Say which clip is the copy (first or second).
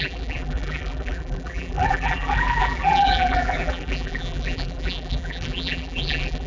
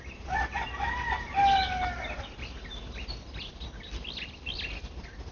first